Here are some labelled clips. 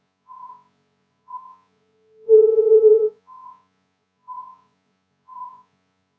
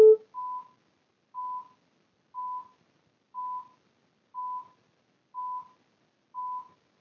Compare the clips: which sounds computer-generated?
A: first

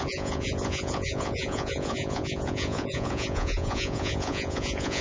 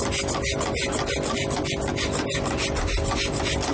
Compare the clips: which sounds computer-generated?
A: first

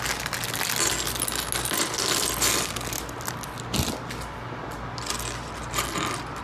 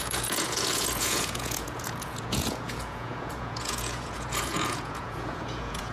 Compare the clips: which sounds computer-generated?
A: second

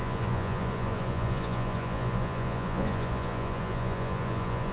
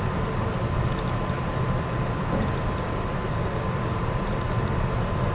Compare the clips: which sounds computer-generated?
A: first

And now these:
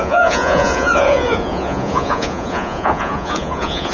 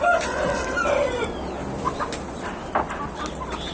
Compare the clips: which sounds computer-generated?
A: first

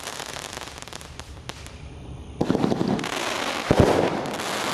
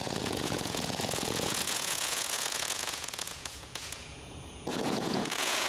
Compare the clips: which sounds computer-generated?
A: second